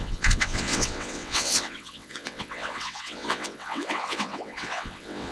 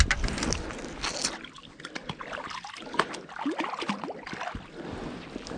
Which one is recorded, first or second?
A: second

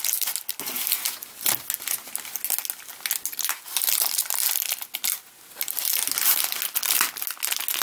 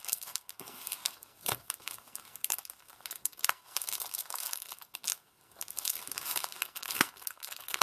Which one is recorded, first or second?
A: first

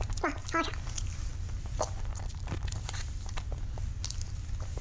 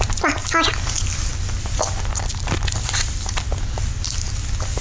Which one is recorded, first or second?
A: second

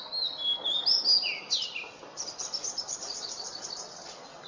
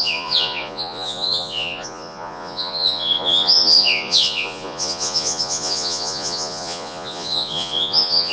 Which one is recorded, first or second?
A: first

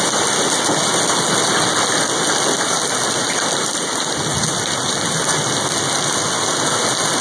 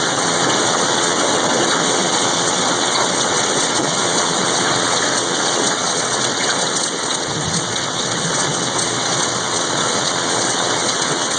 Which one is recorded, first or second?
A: first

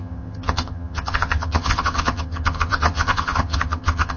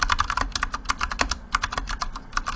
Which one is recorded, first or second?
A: second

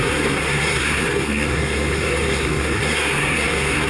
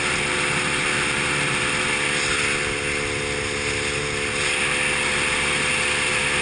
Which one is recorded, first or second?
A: second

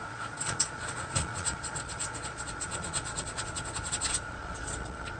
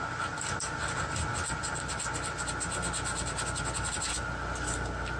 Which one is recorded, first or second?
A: second